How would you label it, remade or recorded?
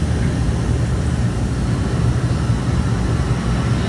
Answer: recorded